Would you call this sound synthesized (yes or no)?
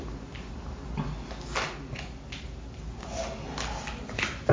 no